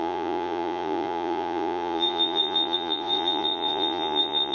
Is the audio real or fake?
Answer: fake